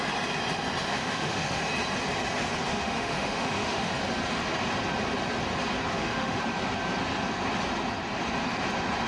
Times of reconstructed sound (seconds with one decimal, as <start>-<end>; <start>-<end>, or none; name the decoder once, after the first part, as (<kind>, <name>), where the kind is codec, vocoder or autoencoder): 0.9-1.6 (autoencoder, DAC-VAE); 2.7-3.9; 5.9-6.4